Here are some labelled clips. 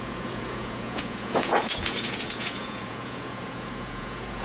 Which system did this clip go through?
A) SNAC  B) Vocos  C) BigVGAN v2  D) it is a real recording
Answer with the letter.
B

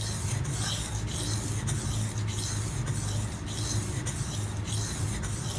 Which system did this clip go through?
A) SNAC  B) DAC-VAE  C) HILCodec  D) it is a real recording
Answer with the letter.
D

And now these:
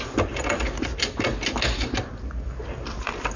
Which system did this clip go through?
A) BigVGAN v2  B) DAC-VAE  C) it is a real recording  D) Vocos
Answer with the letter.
C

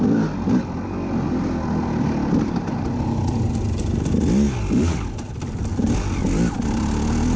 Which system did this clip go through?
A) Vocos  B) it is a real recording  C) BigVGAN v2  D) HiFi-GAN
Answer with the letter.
B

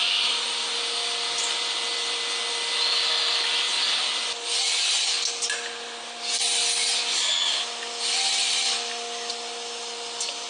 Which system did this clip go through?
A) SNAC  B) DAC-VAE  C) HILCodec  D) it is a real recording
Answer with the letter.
D